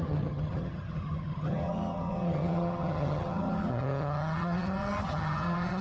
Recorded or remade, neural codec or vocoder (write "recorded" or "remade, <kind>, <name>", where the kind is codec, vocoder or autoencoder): remade, vocoder, HiFi-GAN